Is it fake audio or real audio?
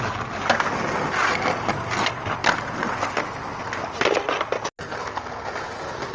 real